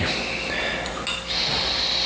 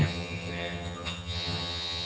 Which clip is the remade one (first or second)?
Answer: second